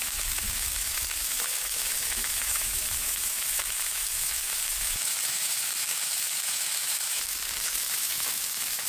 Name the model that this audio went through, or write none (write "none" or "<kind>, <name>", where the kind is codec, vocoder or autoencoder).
autoencoder, DAC-VAE